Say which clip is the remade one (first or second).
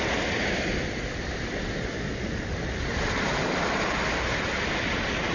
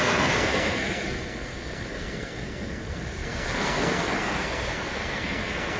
second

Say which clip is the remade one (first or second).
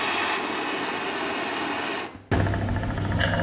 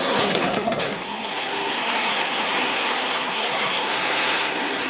second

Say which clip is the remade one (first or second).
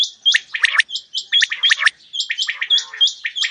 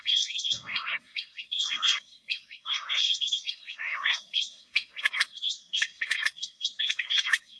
second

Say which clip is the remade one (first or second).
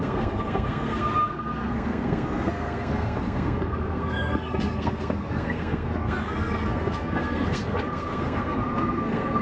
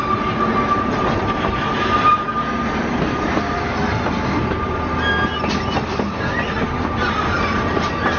first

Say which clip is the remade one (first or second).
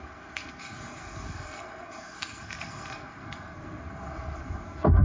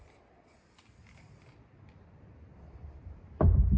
first